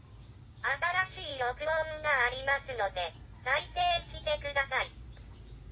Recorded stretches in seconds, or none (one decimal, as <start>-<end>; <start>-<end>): 1.3-4.7